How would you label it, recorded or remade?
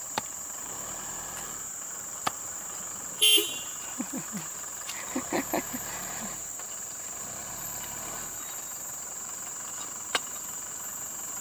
remade